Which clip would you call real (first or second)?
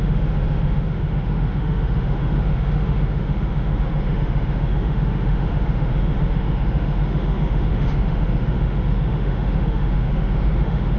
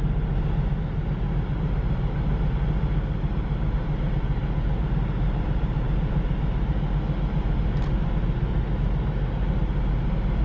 second